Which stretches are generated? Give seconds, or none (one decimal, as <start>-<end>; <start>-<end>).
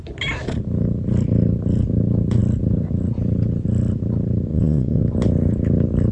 4.5-5.0